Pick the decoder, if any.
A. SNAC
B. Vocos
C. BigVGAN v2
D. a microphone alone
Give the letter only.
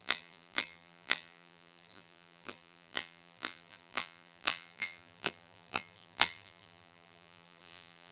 C